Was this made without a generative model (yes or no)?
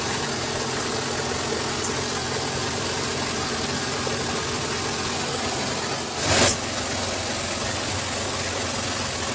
yes